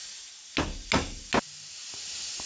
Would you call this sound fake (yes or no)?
no